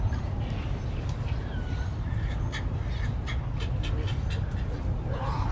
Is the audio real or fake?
real